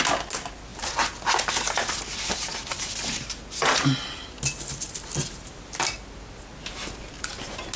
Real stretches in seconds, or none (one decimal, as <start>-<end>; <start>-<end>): 0.0-7.8